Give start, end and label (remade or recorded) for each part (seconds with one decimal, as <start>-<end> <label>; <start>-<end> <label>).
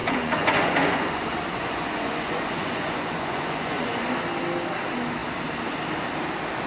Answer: 0.0-4.0 remade; 4.0-6.7 recorded